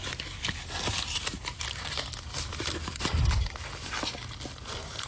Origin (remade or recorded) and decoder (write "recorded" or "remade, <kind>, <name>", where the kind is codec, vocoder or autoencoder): recorded